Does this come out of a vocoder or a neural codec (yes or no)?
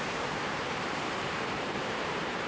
yes